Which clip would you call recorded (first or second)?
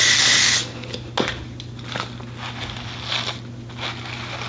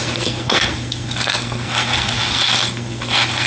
first